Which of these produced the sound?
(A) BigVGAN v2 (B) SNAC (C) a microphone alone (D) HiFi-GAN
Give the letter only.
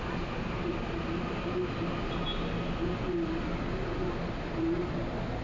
C